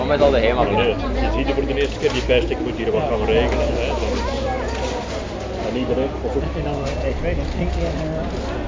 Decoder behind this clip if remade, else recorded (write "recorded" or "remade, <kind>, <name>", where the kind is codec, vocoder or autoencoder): recorded